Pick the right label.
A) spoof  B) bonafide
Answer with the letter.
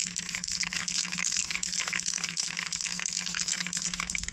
A